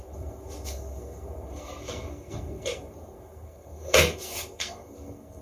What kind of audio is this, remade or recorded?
remade